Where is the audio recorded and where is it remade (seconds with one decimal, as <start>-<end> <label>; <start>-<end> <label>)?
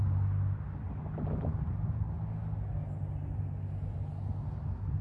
0.0-5.0 recorded